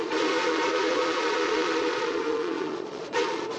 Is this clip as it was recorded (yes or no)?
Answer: no